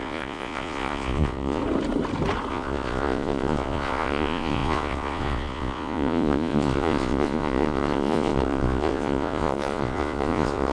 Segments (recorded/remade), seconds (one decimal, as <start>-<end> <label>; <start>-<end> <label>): 0.0-1.6 remade; 1.6-2.5 recorded; 2.5-10.7 remade